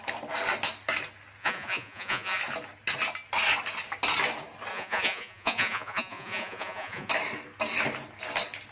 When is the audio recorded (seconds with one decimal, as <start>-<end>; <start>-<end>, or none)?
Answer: 0.0-1.4; 2.4-4.7; 7.1-8.7